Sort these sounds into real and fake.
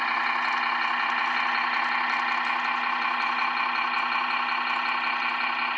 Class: real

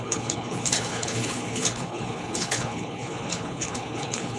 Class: fake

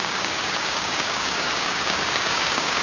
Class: fake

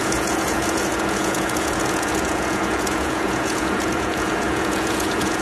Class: fake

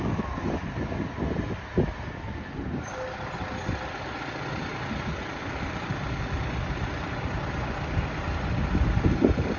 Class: real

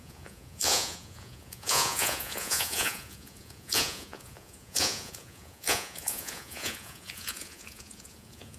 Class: fake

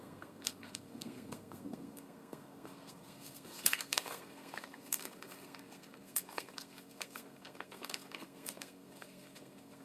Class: fake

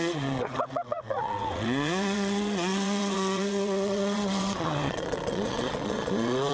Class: fake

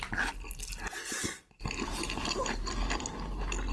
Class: real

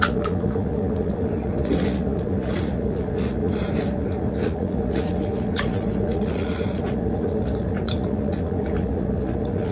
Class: fake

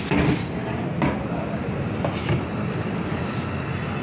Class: real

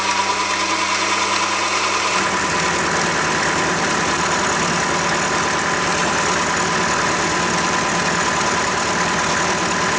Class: real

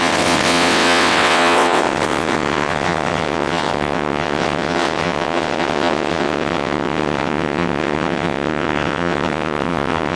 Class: fake